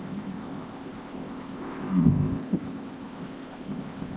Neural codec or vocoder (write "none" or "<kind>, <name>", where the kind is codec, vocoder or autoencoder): codec, ZipCodec